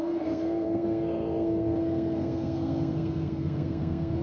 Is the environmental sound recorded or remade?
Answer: remade